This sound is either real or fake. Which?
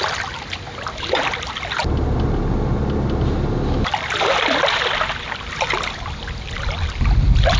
real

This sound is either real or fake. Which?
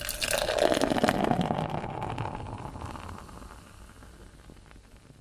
real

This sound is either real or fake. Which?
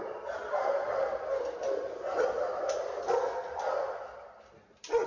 real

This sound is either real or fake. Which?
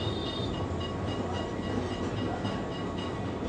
real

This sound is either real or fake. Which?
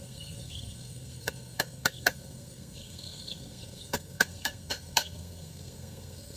fake